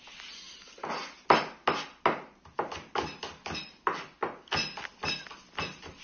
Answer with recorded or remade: recorded